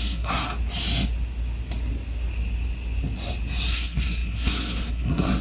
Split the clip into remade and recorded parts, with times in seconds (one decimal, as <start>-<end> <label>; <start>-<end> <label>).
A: 0.0-0.5 remade; 0.5-3.7 recorded; 3.7-5.4 remade